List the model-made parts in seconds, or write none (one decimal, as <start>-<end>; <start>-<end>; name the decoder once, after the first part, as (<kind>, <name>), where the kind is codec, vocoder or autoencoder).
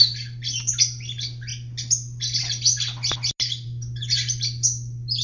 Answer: none